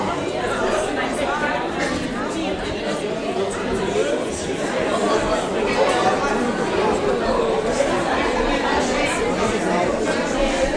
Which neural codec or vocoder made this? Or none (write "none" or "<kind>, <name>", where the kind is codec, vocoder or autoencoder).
none